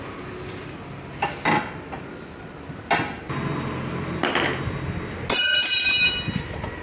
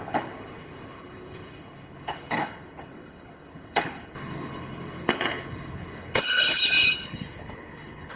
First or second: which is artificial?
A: second